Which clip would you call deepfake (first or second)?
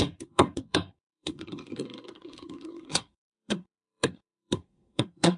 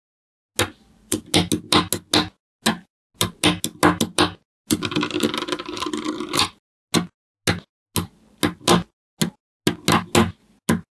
first